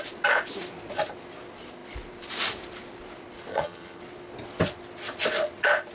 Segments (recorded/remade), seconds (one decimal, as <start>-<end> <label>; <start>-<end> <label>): 0.0-3.5 recorded; 3.5-4.0 remade; 4.0-5.9 recorded